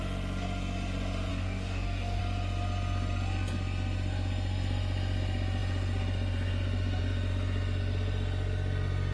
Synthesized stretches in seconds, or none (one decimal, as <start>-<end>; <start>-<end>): 1.3-2.2